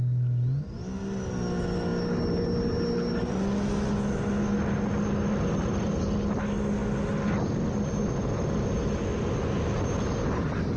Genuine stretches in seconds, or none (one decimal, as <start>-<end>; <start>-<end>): 0.0-10.8